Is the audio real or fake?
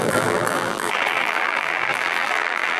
fake